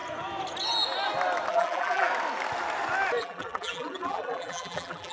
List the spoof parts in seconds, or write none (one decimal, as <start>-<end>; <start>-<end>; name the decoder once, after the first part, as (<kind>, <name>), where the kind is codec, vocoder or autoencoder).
1.5-2.1 (vocoder, BigVGAN v2); 3.2-5.1